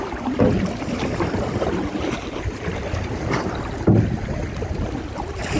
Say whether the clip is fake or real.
real